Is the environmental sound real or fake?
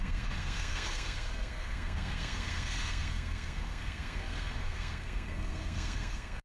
fake